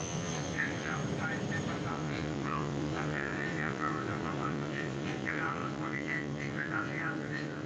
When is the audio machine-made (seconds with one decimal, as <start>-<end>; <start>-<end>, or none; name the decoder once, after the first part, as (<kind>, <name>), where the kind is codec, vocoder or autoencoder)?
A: 0.0-1.0 (vocoder, WaveNeXt); 1.9-7.7